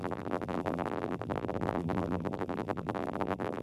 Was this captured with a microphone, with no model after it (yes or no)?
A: no